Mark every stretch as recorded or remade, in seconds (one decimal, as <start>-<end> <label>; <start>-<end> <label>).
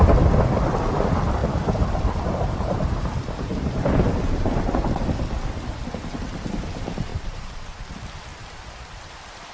0.0-1.4 recorded; 1.4-4.7 remade; 4.7-7.1 recorded; 7.1-7.9 remade; 7.9-8.3 recorded; 8.3-9.1 remade; 9.1-9.5 recorded